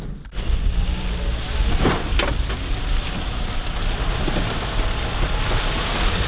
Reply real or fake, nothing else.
real